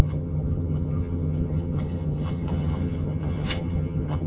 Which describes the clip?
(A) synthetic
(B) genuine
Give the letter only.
A